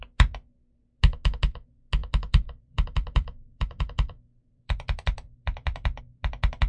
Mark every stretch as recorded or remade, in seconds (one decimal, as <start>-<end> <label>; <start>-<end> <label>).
0.0-2.0 recorded; 2.0-6.0 remade; 6.0-6.7 recorded